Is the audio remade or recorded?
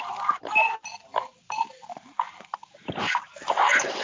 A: recorded